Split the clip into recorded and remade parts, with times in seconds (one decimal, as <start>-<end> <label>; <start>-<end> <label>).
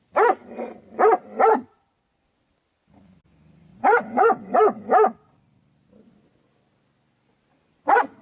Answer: 0.0-3.7 recorded; 3.7-4.8 remade; 4.8-8.2 recorded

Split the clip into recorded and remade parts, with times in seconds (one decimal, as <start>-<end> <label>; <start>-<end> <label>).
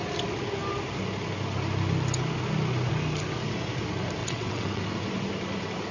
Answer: 0.0-4.2 recorded; 4.2-4.8 remade; 4.8-5.9 recorded